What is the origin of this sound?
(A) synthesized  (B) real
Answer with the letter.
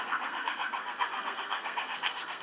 A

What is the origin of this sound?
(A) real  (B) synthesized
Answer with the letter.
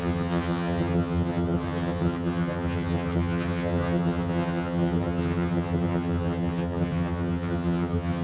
B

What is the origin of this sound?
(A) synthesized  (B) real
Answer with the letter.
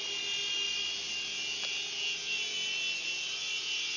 B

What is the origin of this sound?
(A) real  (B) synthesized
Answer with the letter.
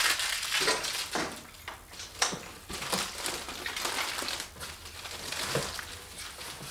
A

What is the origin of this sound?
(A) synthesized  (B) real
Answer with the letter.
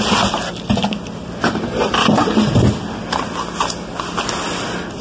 B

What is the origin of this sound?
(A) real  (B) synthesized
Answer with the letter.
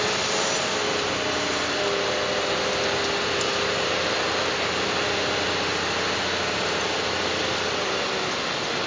A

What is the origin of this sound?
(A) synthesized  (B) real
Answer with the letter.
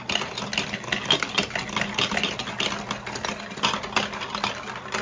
B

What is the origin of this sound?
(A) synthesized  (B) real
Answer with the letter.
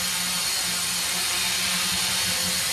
B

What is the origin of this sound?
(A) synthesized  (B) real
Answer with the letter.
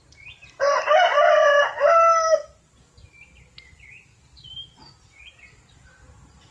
B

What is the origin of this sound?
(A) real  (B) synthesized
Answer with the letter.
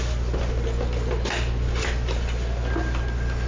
A